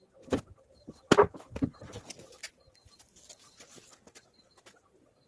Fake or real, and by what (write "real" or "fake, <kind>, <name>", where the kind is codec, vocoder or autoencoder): real